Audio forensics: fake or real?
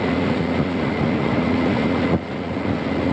fake